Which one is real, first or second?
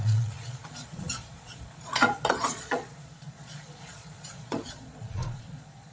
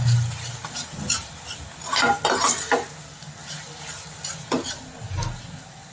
second